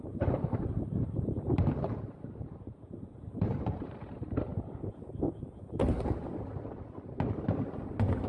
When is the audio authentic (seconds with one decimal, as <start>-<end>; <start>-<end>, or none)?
4.5-5.6; 6.2-8.3